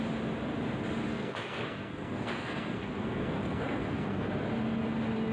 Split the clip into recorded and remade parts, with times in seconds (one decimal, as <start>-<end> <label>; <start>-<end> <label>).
0.0-1.1 recorded; 1.1-4.3 remade; 4.3-5.3 recorded